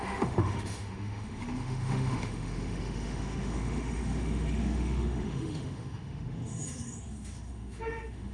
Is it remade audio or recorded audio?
remade